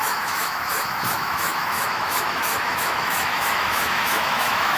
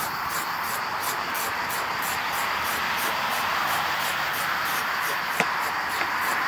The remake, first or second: first